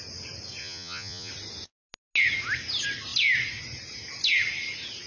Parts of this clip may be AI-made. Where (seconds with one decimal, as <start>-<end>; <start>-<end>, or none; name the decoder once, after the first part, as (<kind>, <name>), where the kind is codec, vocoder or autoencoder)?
0.6-1.3 (vocoder, Vocos)